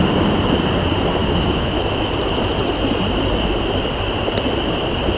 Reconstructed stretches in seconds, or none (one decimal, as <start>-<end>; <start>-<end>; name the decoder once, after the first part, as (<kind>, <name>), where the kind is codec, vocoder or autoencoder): 1.2-2.1 (autoencoder, DAC-VAE)